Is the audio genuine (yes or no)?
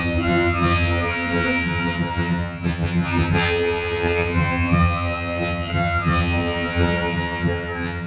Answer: no